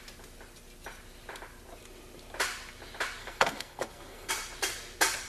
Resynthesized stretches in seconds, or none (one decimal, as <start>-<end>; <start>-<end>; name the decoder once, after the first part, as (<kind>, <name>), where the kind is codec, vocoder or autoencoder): 3.2-4.3 (codec, SNAC)